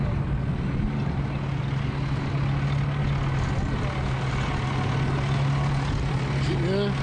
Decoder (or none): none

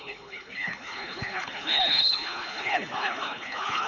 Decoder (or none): codec, HILCodec